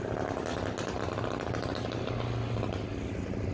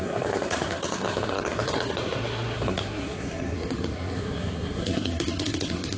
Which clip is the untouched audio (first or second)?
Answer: first